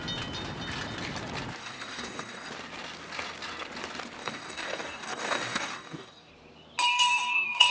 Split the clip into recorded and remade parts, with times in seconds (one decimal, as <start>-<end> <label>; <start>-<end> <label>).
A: 0.0-1.6 recorded; 1.6-2.5 remade; 2.5-4.2 recorded; 4.2-6.3 remade; 6.3-6.8 recorded; 6.8-7.7 remade

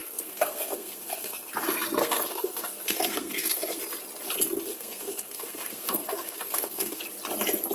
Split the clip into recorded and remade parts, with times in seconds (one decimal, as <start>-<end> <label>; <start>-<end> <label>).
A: 0.0-1.5 remade; 1.5-2.0 recorded; 2.0-3.8 remade; 3.8-4.7 recorded; 4.7-7.0 remade; 7.0-7.7 recorded

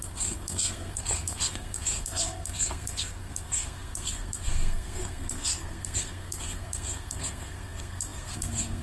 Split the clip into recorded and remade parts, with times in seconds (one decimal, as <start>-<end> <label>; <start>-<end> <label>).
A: 0.0-8.8 remade